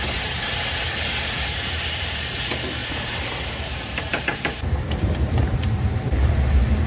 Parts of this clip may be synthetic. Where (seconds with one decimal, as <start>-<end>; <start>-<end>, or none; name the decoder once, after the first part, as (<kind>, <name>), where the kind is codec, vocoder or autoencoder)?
0.0-6.9 (vocoder, BigVGAN v2)